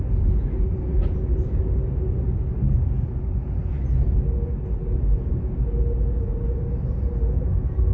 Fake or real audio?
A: real